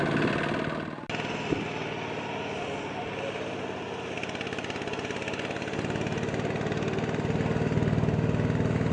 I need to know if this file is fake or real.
real